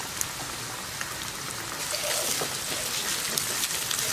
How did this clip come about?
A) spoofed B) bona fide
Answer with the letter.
B